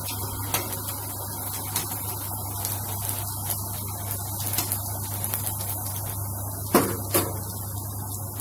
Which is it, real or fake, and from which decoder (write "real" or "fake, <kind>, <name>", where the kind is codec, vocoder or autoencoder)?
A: real